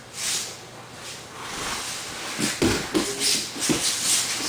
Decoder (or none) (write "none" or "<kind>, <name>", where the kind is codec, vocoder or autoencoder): none